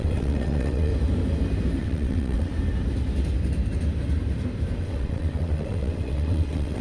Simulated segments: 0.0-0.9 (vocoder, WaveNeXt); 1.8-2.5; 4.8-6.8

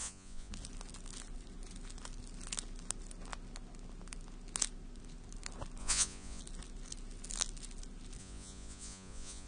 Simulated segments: 0.0-0.5 (vocoder, Vocos); 5.8-6.4; 8.2-9.5

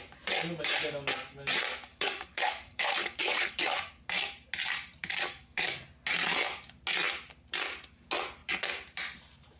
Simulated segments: 1.9-3.9 (codec, DAC); 5.0-5.8